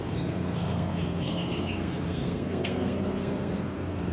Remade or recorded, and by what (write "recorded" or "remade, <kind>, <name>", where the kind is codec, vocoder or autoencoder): remade, codec, SNAC